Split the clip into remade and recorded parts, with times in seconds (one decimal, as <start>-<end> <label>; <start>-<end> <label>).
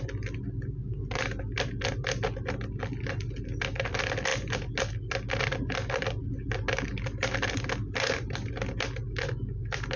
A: 0.0-10.0 recorded